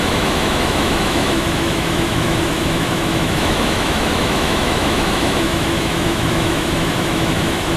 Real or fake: fake